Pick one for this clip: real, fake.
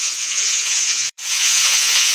fake